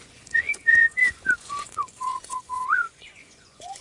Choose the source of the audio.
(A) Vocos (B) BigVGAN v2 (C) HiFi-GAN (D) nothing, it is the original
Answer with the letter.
A